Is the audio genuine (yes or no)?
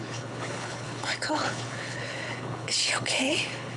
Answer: no